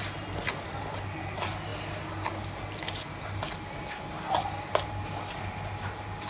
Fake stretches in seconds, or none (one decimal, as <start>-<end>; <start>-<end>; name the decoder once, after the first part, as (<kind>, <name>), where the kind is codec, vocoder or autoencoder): none